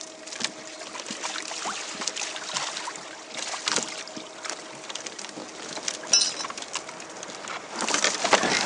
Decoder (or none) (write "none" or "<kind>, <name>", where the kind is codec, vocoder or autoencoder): none